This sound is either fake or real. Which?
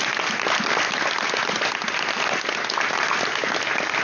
real